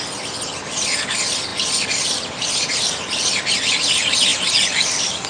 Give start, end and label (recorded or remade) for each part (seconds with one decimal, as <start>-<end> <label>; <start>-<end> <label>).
0.0-5.3 recorded